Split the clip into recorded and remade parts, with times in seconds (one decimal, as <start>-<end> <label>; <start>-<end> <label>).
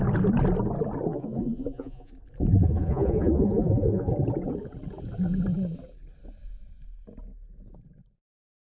0.0-1.1 recorded; 1.1-2.1 remade; 2.1-2.5 recorded; 2.5-4.1 remade; 4.1-8.8 recorded